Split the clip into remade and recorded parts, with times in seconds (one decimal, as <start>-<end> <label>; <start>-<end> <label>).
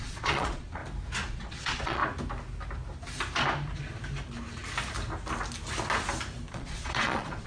0.0-0.8 remade; 0.8-1.3 recorded; 1.3-2.0 remade; 2.0-6.5 recorded; 6.5-7.5 remade